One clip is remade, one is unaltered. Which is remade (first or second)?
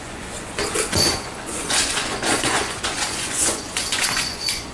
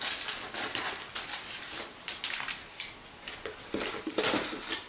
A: first